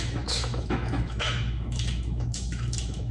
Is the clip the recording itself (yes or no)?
no